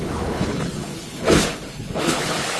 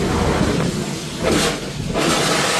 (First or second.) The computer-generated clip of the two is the first